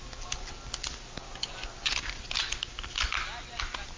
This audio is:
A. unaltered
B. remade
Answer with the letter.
A